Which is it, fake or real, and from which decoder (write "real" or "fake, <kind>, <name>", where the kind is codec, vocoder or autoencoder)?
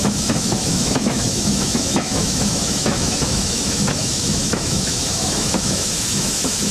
fake, autoencoder, DAC-VAE